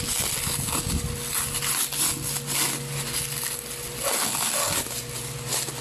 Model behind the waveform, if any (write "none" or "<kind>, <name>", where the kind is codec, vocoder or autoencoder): none